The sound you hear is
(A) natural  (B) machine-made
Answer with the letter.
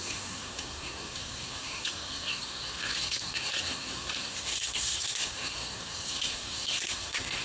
B